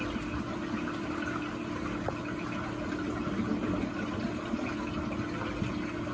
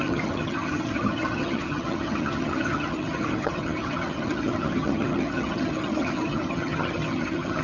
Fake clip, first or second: second